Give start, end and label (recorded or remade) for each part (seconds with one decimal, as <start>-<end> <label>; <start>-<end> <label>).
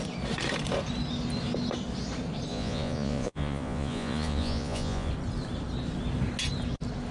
0.0-2.5 recorded; 2.5-5.1 remade; 5.1-7.1 recorded